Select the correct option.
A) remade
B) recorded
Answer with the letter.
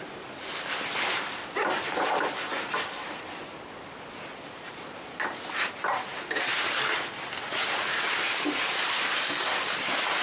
A